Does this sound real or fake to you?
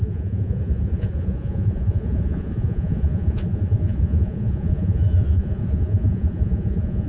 fake